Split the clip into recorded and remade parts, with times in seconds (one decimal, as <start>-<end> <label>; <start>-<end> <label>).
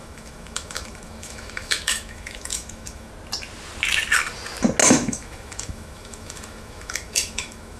0.0-3.1 remade; 3.1-4.8 recorded; 4.8-7.8 remade